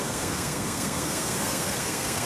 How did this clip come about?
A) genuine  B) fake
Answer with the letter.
B